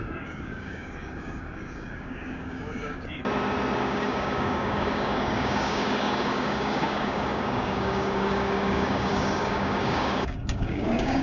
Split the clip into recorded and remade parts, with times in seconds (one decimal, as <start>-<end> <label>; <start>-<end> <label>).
0.0-3.2 remade; 3.2-3.8 recorded; 3.8-11.2 remade